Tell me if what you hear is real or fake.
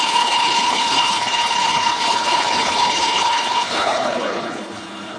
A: fake